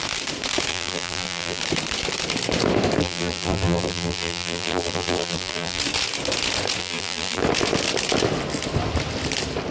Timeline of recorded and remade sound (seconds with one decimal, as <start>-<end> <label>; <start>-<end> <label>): 0.0-0.7 recorded; 0.7-1.6 remade; 1.6-3.0 recorded; 3.0-5.8 remade; 5.8-6.8 recorded; 6.8-7.4 remade; 7.4-9.7 recorded